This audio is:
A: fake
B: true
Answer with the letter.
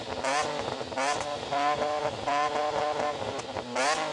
B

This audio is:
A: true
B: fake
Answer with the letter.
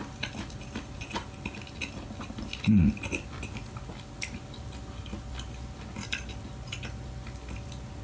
A